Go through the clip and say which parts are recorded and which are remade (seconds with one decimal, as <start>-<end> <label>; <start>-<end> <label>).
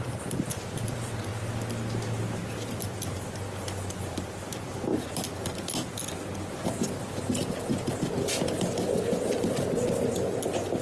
0.0-10.8 recorded